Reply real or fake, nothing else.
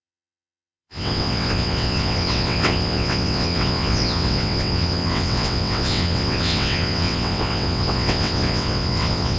fake